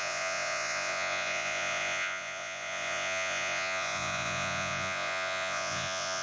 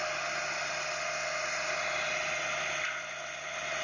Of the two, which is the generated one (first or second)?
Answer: first